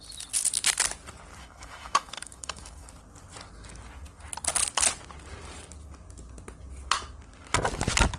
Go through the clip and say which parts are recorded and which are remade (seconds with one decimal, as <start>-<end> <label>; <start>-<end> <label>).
0.0-1.4 recorded; 1.4-2.9 remade; 2.9-8.2 recorded